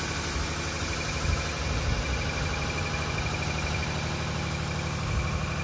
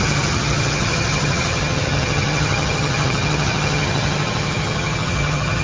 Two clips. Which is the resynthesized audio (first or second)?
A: second